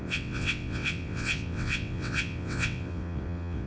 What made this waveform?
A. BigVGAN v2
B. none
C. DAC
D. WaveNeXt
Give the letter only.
D